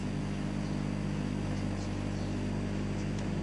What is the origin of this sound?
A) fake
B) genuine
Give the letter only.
B